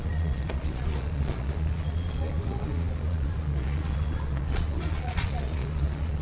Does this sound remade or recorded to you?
remade